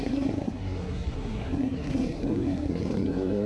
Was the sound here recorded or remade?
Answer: remade